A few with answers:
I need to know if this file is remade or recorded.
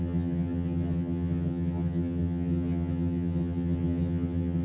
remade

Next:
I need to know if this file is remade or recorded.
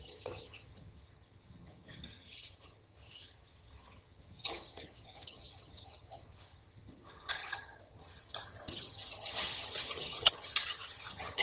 remade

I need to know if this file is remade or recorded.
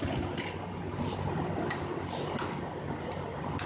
recorded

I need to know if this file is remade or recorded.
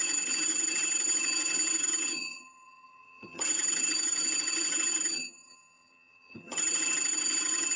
remade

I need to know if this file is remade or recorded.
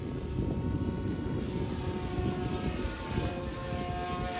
recorded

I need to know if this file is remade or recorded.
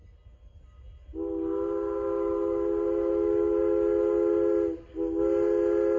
recorded